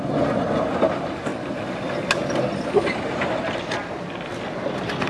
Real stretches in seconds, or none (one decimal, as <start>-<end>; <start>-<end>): 0.0-5.1

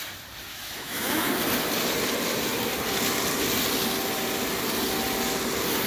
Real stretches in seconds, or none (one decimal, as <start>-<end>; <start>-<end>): 0.0-0.5; 1.3-5.9

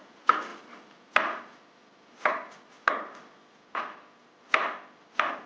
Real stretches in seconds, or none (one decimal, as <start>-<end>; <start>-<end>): 0.0-5.5

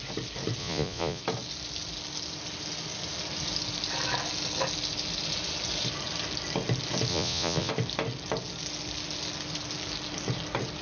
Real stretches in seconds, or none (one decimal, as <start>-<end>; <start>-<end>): 0.0-0.6; 1.2-7.1; 7.7-10.8

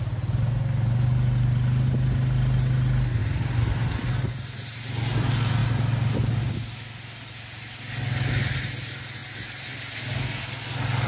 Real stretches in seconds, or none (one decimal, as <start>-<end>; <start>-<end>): 0.0-11.1

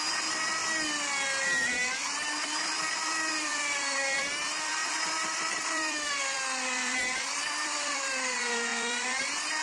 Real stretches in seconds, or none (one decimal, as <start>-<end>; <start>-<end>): 0.6-1.4

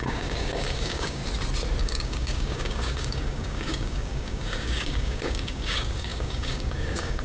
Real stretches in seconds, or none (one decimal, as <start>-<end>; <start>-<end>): 1.2-1.8

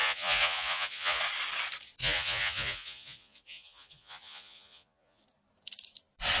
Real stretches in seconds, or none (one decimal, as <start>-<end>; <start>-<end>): 1.2-2.0; 5.2-6.4